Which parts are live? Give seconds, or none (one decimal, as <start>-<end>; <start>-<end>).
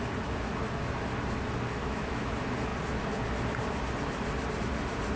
0.0-1.8; 2.3-5.2